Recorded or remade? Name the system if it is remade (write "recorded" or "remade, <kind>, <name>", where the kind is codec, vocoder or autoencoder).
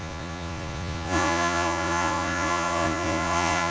remade, vocoder, Vocos